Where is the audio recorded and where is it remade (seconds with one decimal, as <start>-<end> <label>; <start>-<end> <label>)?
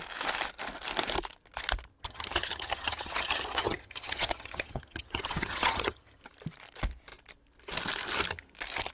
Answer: 0.0-1.9 recorded; 1.9-6.2 remade; 6.2-8.9 recorded